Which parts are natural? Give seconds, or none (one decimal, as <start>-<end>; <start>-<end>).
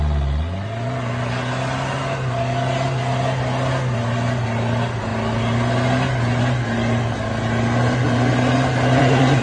0.0-9.4